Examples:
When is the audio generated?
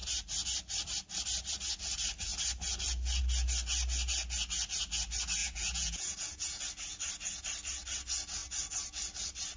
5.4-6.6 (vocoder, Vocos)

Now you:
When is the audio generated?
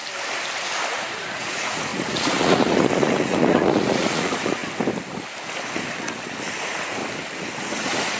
0.9-4.6 (vocoder, Vocos); 6.6-7.0; 7.7-8.2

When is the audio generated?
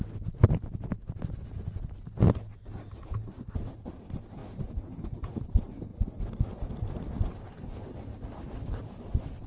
4.4-5.3 (vocoder, Vocos)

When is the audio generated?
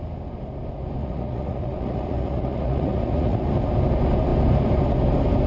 1.0-3.4 (vocoder, Vocos)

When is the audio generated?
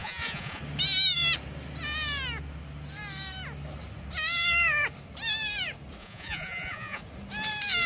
0.0-0.6 (vocoder, Vocos); 6.0-7.0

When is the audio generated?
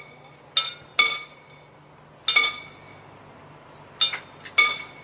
none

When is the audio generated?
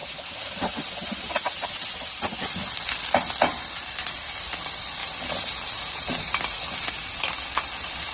none